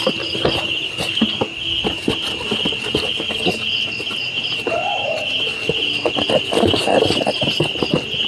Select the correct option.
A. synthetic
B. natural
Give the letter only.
B